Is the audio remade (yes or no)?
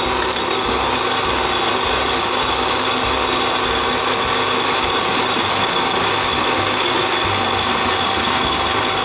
no